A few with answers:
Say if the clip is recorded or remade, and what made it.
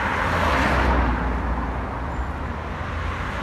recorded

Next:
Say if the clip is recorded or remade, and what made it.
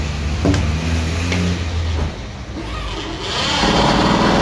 recorded